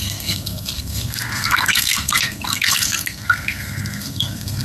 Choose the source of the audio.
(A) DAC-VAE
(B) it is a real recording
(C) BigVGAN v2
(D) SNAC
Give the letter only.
D